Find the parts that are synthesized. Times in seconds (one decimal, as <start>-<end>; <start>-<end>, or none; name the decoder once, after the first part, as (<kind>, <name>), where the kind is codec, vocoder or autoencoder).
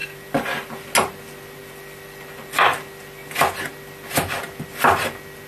0.0-0.8 (vocoder, BigVGAN v2); 1.6-2.9